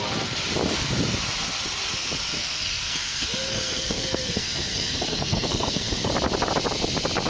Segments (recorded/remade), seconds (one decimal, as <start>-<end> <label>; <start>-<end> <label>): 0.0-2.4 recorded; 2.4-6.1 remade; 6.1-7.3 recorded